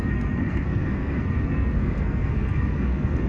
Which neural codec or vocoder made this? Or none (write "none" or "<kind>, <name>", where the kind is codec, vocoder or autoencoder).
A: codec, SNAC